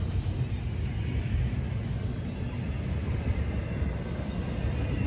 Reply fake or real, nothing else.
real